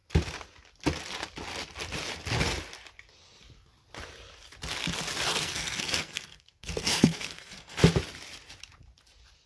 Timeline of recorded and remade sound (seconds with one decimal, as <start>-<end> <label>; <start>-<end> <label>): 0.0-5.3 recorded; 5.3-7.8 remade; 7.8-9.5 recorded